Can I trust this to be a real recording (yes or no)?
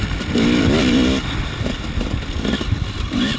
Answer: yes